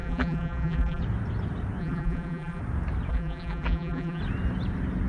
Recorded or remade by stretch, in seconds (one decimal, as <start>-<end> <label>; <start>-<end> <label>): 0.0-1.0 remade; 1.0-1.8 recorded; 1.8-2.6 remade; 2.6-3.1 recorded; 3.1-4.2 remade; 4.2-5.1 recorded